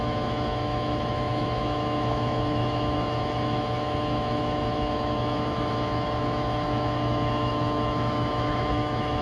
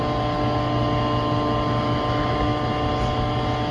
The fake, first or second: first